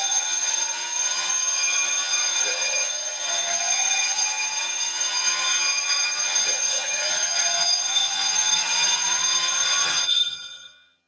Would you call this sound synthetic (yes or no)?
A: yes